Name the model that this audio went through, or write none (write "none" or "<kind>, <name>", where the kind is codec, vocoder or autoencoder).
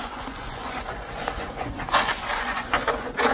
vocoder, Vocos